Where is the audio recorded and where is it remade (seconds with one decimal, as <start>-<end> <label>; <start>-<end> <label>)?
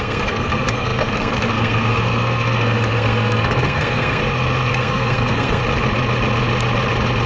0.0-4.2 remade; 4.2-4.7 recorded; 4.7-5.6 remade; 5.6-7.3 recorded